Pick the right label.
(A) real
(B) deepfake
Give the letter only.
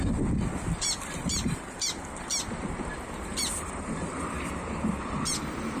B